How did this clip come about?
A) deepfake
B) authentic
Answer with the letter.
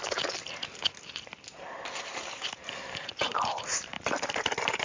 B